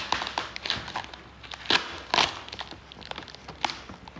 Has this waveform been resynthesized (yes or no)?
no